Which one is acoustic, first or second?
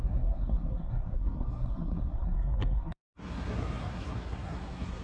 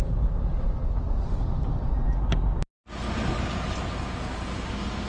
second